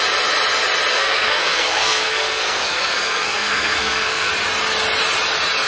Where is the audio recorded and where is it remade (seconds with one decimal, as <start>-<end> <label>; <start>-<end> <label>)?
0.0-0.9 recorded; 0.9-4.3 remade; 4.3-5.7 recorded